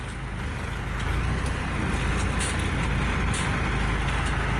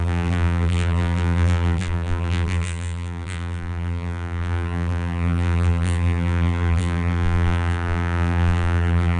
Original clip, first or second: first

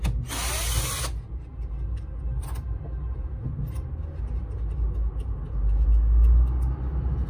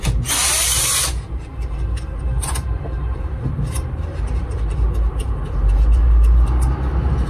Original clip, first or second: first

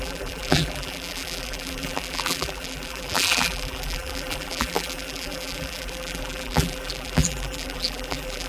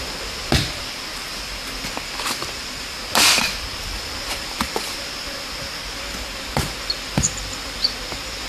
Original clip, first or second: second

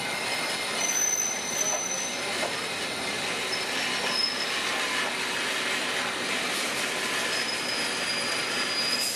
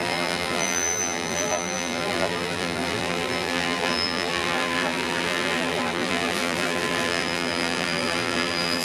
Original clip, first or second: first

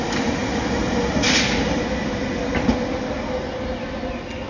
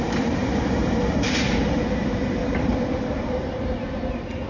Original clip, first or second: first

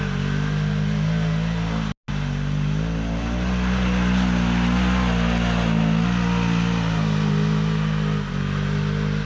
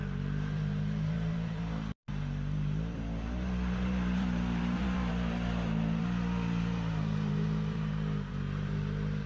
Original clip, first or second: first